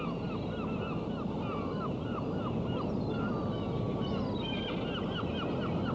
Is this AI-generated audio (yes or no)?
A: no